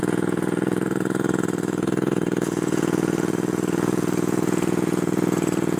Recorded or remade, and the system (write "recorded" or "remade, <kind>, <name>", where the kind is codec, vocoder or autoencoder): remade, vocoder, Vocos